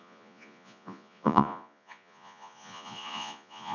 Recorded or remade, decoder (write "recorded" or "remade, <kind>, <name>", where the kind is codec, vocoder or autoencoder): remade, vocoder, Vocos